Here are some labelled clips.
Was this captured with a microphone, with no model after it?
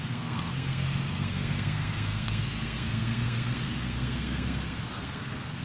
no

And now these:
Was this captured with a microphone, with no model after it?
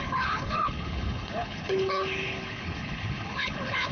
no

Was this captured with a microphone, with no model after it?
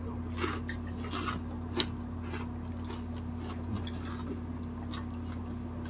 yes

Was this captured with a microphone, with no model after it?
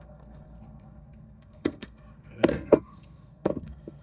no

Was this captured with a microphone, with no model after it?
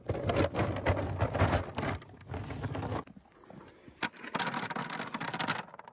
yes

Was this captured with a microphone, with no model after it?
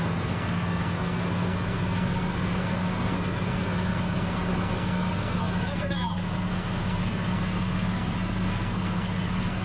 no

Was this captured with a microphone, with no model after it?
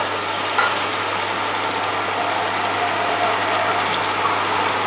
yes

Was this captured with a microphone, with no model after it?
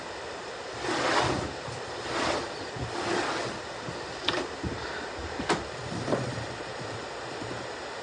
no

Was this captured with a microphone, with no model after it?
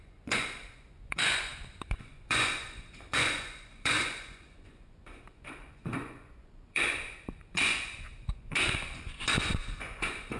no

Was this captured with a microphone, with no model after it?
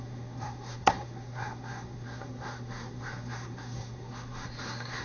no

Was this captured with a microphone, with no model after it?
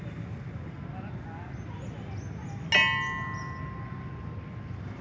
yes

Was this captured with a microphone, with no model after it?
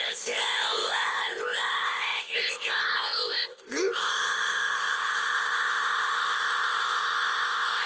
no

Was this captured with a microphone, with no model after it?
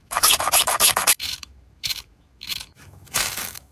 no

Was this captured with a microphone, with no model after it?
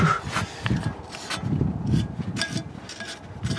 yes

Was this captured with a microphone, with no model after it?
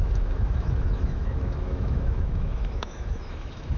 no